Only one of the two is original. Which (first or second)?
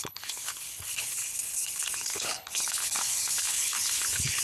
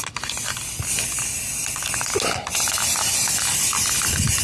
second